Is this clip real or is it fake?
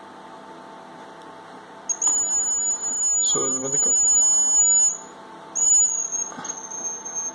real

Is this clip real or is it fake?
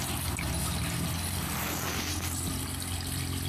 real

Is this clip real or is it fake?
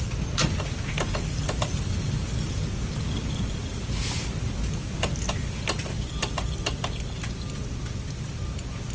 real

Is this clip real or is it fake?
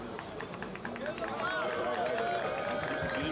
real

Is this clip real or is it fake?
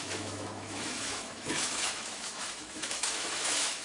fake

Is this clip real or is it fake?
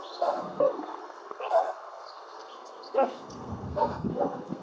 fake